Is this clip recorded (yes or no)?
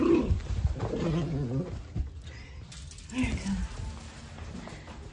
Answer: yes